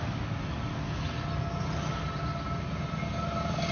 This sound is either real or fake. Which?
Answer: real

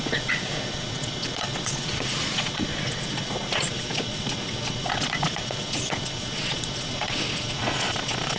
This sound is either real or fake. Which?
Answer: fake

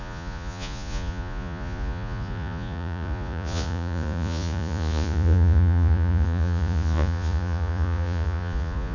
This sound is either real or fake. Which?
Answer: fake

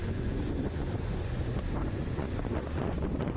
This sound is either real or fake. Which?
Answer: fake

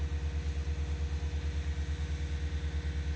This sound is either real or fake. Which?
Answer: real